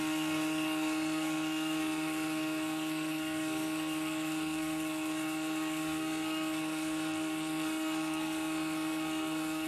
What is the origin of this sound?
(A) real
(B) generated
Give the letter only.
B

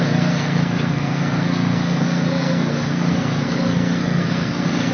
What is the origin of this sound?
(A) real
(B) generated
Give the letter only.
B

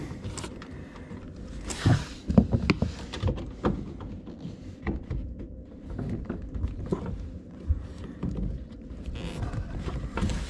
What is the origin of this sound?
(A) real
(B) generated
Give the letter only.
A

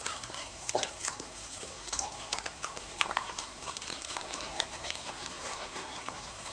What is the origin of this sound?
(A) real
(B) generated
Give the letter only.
B